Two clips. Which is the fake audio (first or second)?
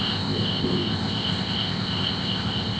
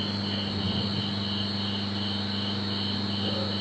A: first